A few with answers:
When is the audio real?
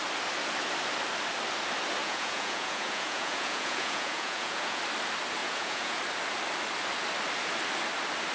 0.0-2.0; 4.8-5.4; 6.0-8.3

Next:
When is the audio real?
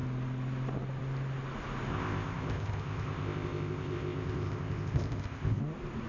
0.0-1.9; 5.6-6.1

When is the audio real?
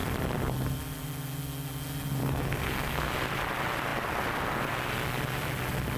0.0-2.2; 3.1-6.0